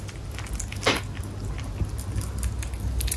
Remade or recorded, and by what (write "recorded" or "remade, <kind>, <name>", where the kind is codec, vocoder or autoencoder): recorded